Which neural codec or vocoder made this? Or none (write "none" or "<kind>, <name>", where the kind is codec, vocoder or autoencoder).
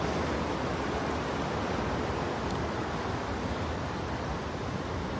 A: none